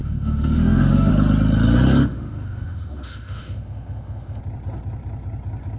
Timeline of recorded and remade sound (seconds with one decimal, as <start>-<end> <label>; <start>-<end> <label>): 0.0-1.1 remade; 1.1-2.0 recorded; 2.0-4.4 remade; 4.4-5.8 recorded